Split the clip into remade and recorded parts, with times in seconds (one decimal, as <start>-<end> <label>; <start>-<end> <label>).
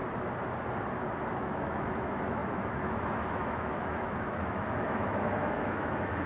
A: 0.0-1.3 recorded; 1.3-6.3 remade